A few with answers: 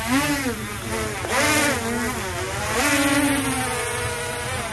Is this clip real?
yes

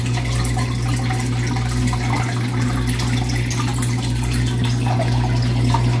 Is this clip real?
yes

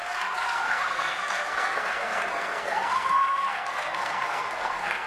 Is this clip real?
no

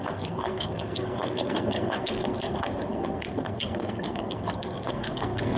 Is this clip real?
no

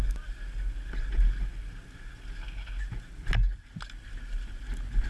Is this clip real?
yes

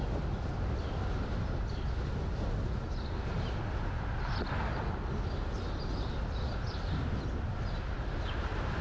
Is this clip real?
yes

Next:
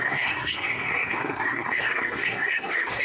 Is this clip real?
no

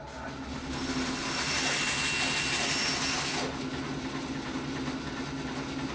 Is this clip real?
yes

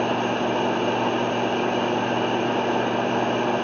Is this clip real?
yes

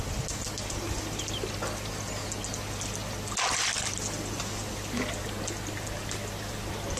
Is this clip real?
yes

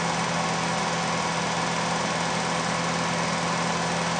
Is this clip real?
yes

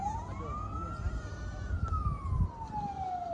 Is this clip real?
yes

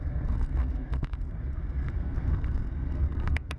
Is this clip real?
no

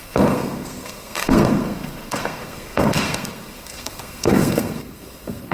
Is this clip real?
no